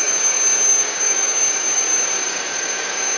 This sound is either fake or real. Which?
fake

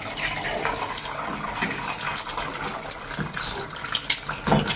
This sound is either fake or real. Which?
real